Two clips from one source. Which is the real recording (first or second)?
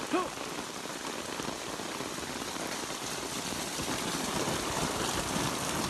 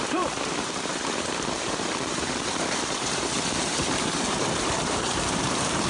first